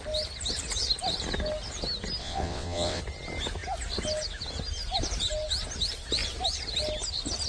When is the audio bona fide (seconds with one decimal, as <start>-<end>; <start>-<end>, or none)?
0.0-2.2; 3.0-7.5